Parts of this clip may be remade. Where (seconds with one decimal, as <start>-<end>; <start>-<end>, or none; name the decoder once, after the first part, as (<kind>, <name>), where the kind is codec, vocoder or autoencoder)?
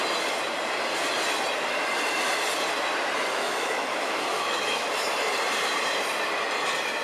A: 3.3-4.9 (autoencoder, DAC-VAE)